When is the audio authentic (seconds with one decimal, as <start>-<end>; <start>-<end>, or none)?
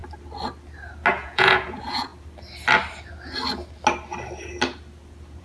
0.0-1.1; 2.1-5.4